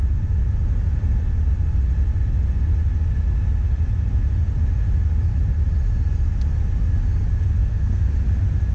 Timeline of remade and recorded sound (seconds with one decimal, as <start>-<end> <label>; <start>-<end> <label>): 0.0-7.6 recorded; 7.6-8.1 remade; 8.1-8.7 recorded